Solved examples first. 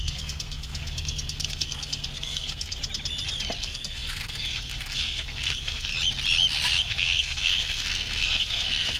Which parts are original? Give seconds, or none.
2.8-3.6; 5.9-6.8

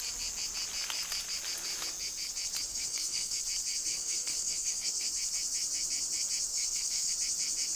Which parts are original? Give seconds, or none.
0.0-2.7; 3.4-3.9; 5.1-6.5; 7.1-7.8

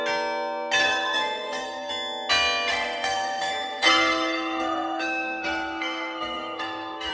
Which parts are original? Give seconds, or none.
0.0-0.8; 1.9-2.7

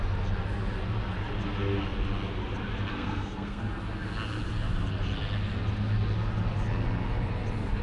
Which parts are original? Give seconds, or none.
0.0-2.9; 3.6-7.8